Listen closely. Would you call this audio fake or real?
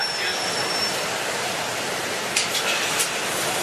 fake